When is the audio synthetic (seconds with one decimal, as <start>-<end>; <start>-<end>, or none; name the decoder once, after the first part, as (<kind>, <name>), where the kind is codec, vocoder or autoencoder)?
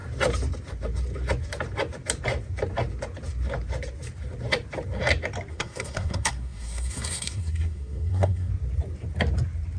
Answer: 5.5-8.5 (codec, SNAC)